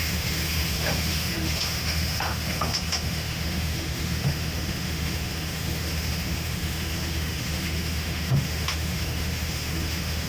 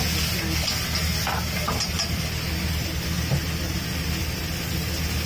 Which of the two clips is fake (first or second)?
first